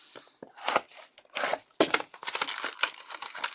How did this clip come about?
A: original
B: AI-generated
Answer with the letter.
A